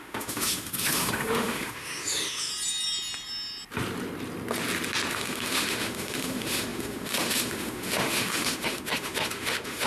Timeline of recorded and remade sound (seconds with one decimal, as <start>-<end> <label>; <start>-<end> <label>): 0.0-2.5 remade; 2.5-5.1 recorded; 5.1-9.9 remade